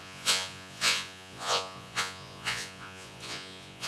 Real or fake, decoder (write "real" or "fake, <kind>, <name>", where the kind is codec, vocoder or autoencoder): fake, vocoder, Vocos